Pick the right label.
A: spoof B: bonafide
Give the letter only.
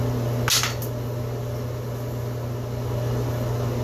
B